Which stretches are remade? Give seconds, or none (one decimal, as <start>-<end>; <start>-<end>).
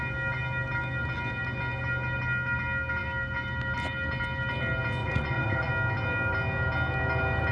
5.0-5.7